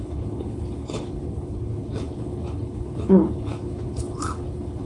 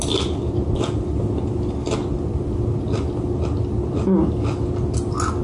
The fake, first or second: first